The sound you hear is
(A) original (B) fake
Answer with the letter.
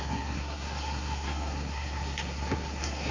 B